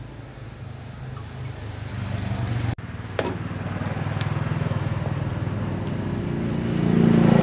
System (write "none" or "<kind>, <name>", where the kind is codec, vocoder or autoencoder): none